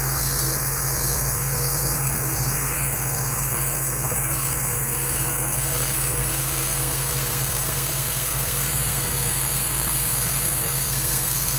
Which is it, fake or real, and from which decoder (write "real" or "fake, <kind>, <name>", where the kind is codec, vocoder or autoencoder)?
fake, codec, SNAC